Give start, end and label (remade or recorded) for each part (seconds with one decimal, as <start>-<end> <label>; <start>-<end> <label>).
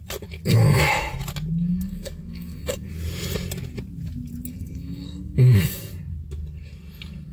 0.0-0.5 recorded; 0.5-1.1 remade; 1.1-1.7 recorded; 1.7-2.9 remade; 2.9-4.5 recorded; 4.5-5.9 remade; 5.9-7.3 recorded